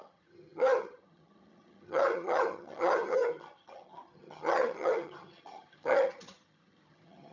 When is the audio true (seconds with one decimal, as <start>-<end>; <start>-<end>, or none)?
none